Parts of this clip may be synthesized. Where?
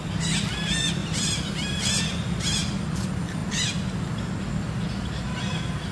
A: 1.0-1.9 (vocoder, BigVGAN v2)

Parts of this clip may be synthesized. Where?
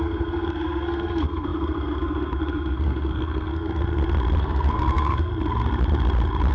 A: 0.0-3.8 (codec, SNAC); 4.4-5.3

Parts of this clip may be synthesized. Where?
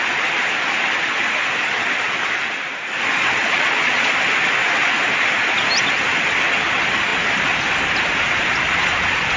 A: 3.4-4.1 (vocoder, Vocos)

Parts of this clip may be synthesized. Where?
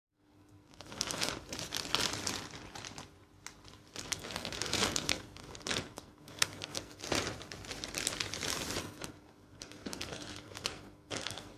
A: 0.0-1.3 (codec, SNAC); 4.0-7.0; 8.8-11.6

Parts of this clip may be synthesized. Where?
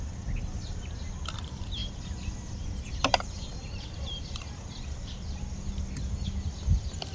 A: none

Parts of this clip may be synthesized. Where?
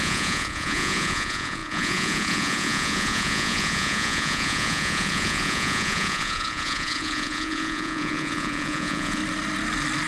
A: 0.0-9.2 (vocoder, Vocos)